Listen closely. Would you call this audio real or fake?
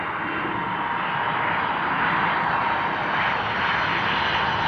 real